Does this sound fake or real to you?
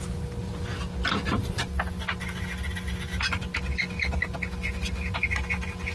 real